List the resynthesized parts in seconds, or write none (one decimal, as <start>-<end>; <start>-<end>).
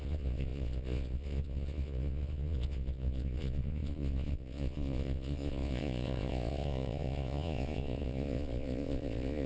0.0-9.5